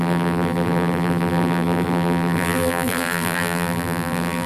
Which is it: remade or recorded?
remade